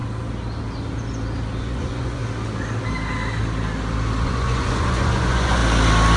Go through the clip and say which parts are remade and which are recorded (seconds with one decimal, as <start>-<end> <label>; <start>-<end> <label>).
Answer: 0.0-1.6 recorded; 1.6-2.2 remade; 2.2-4.2 recorded; 4.2-5.6 remade; 5.6-6.2 recorded